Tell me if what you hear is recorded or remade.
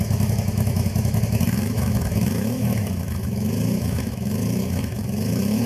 remade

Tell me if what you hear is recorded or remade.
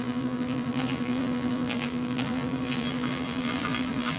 remade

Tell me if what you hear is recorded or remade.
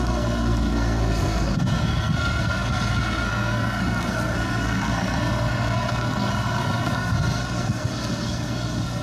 remade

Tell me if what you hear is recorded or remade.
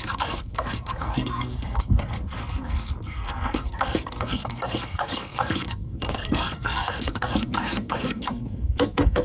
remade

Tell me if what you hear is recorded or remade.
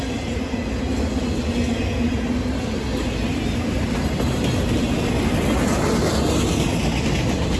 recorded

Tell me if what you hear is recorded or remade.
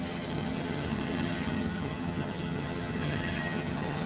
remade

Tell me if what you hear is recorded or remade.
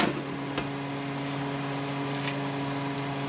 recorded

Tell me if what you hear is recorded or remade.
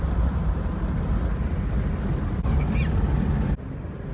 recorded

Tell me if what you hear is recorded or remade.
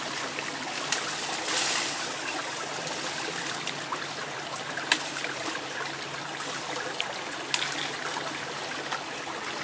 recorded